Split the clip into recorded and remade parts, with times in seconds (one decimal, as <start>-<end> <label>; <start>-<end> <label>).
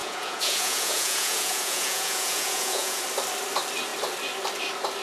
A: 0.0-3.0 remade; 3.0-5.0 recorded